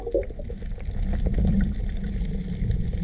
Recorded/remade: recorded